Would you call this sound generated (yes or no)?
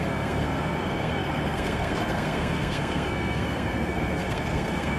yes